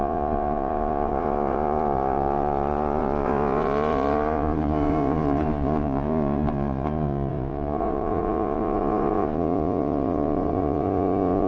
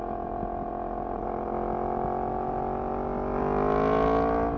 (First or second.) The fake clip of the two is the first